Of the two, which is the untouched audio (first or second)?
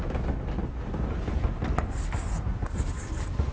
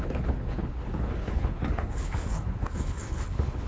first